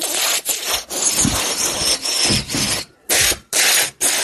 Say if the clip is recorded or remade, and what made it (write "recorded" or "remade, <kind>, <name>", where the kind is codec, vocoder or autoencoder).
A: recorded